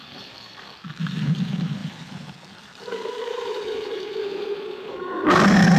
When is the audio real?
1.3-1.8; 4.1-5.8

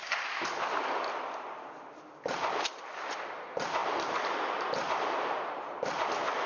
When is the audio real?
0.0-6.5